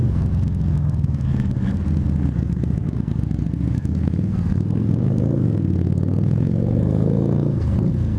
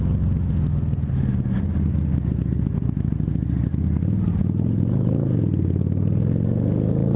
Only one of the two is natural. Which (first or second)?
second